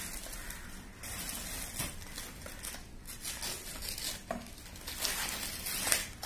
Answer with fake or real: real